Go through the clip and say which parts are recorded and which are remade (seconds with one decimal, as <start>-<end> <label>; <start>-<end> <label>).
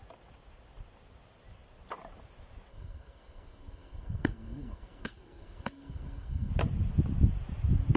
0.0-2.7 recorded; 2.7-6.5 remade; 6.5-8.0 recorded